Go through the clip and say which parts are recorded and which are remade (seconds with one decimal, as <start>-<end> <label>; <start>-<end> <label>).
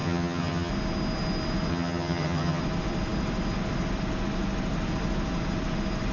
0.0-0.7 remade; 0.7-1.7 recorded; 1.7-2.6 remade; 2.6-6.1 recorded